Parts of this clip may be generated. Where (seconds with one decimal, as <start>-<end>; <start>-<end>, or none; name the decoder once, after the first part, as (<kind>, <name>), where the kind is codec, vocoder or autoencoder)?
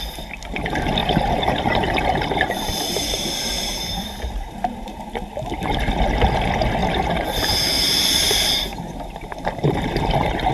1.0-5.1 (vocoder, BigVGAN v2); 6.8-10.5